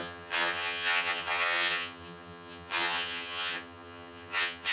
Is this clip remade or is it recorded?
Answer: remade